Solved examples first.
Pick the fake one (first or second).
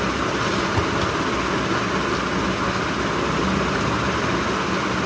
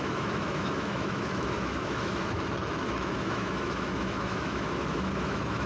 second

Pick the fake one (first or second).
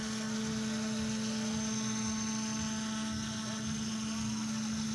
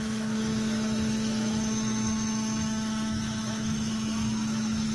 second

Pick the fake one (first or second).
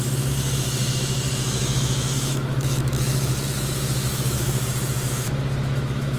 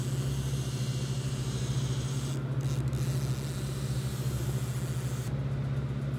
first